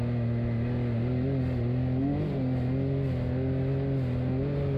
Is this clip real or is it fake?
real